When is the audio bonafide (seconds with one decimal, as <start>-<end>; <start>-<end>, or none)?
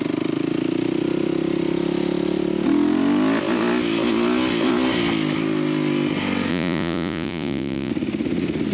0.0-6.5; 7.9-8.7